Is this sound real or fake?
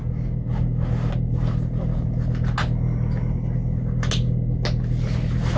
real